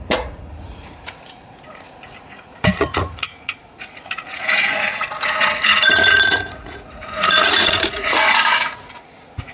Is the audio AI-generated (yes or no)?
yes